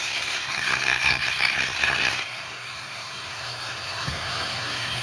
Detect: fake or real fake